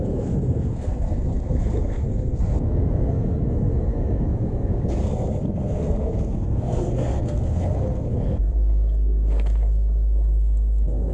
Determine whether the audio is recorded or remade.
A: remade